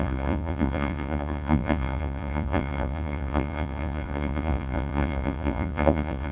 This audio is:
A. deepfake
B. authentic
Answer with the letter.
A